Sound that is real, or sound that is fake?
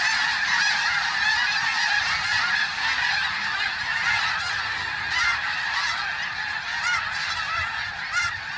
real